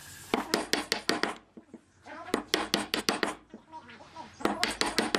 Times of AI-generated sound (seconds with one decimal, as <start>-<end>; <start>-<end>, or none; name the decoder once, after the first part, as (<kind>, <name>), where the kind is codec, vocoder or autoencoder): none